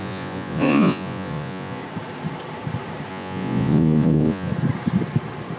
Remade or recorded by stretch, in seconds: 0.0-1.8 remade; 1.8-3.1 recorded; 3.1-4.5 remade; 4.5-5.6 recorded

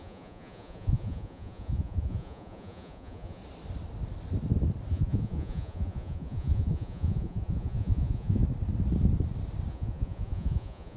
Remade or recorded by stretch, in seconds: 0.0-3.4 remade; 3.4-4.9 recorded; 4.9-8.4 remade; 8.4-9.7 recorded; 9.7-11.0 remade

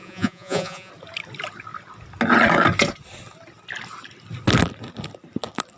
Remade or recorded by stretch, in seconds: 0.0-0.9 remade; 0.9-5.8 recorded

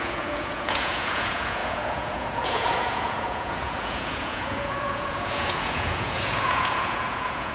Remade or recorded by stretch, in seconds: 0.0-7.5 remade

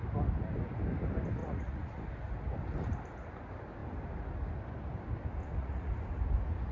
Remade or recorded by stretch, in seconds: 0.0-1.4 recorded; 1.4-2.0 remade; 2.0-5.4 recorded; 5.4-5.9 remade; 5.9-6.7 recorded

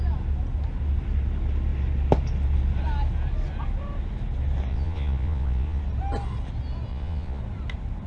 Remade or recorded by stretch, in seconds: 0.0-4.7 recorded; 4.7-5.8 remade; 5.8-6.9 recorded; 6.9-7.4 remade; 7.4-8.1 recorded